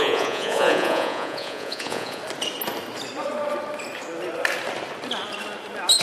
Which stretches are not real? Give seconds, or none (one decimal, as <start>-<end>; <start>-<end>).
0.0-2.2